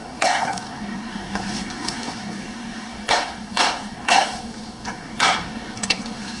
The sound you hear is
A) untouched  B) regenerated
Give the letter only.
B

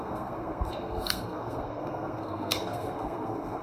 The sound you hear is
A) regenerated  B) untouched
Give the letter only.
A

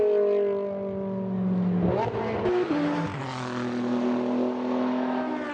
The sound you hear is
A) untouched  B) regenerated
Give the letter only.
A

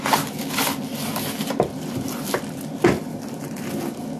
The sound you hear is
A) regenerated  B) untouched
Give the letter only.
B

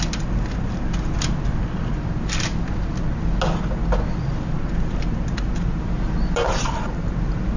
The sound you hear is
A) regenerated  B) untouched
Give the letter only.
B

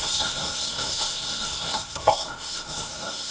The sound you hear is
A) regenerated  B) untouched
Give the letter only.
A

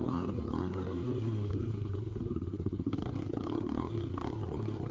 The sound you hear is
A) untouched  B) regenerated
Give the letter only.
B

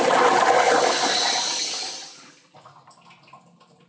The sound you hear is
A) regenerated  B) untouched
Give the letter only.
B